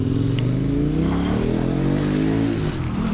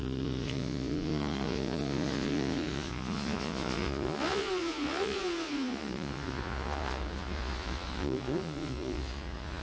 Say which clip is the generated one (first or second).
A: second